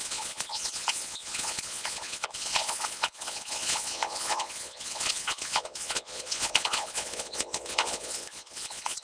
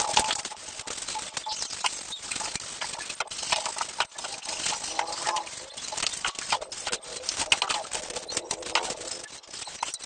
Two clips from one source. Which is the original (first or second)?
second